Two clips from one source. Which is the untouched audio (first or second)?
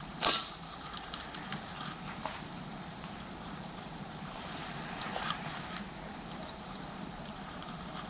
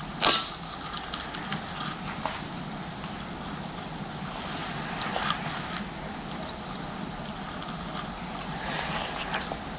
second